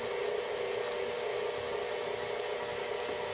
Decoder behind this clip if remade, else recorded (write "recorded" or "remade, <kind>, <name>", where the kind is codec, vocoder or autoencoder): recorded